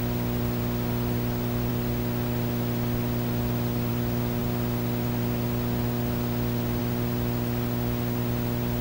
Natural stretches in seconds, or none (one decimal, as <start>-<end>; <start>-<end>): 0.0-8.8